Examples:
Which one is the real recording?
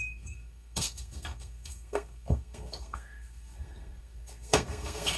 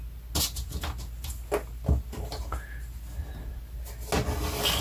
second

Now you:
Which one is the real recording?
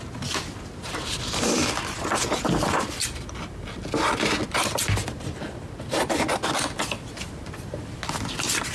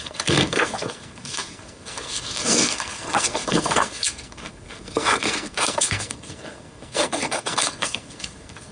first